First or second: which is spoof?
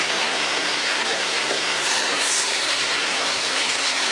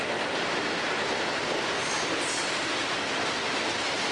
first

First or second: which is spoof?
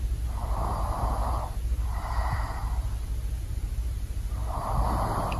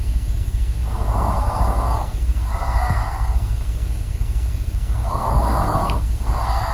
second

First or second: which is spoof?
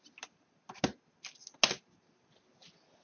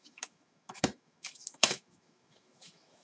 second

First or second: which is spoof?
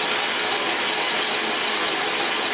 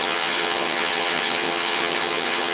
second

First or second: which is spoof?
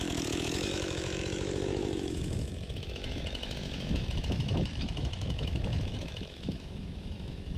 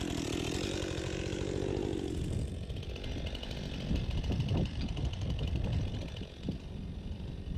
first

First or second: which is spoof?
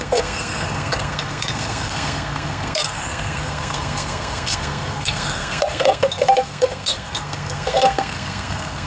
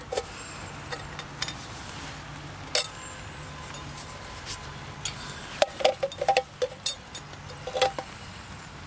first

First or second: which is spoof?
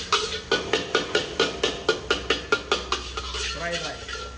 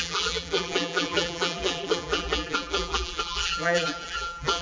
second